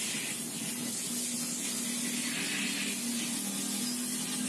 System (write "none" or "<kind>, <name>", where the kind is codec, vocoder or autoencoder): none